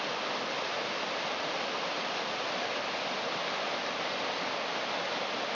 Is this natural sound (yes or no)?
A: yes